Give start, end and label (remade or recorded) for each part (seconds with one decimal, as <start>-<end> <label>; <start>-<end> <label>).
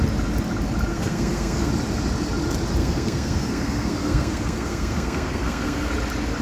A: 0.0-0.9 recorded; 0.9-1.7 remade; 1.7-2.8 recorded; 2.8-5.9 remade; 5.9-6.4 recorded